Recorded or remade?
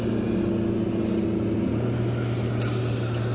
recorded